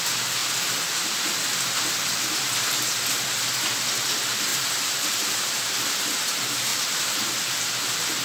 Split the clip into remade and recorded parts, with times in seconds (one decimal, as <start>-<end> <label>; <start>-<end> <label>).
0.0-0.4 recorded; 0.4-3.1 remade; 3.1-4.5 recorded; 4.5-5.5 remade; 5.5-6.7 recorded; 6.7-7.6 remade; 7.6-8.2 recorded